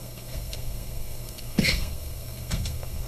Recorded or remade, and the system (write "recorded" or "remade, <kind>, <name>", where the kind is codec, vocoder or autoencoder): remade, codec, SNAC